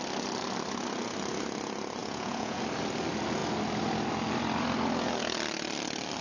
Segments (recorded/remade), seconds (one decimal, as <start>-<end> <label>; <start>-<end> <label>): 0.0-2.0 recorded; 2.0-2.6 remade; 2.6-6.2 recorded